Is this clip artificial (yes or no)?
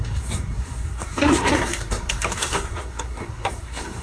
yes